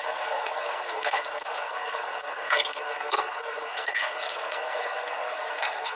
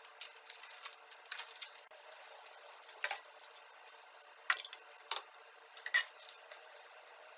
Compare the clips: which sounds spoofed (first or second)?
first